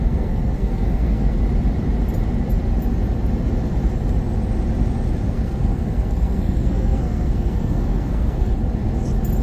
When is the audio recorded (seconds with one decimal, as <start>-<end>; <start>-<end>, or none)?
1.4-5.3; 8.5-9.4